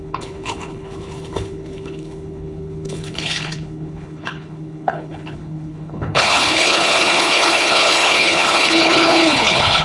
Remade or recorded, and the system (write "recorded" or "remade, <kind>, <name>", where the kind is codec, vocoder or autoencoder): remade, codec, HILCodec